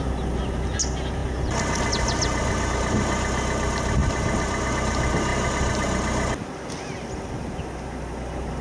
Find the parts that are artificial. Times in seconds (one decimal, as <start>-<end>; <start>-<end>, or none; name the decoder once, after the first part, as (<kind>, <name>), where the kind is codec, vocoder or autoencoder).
none